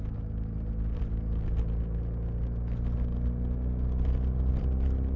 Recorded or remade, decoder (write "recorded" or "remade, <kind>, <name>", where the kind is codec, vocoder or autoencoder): recorded